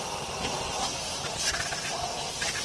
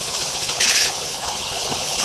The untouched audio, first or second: first